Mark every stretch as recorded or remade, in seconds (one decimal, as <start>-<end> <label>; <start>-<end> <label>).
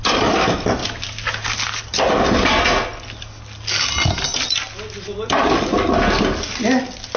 0.0-7.2 recorded